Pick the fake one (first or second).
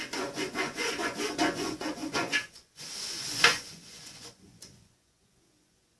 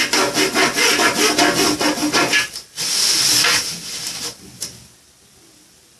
first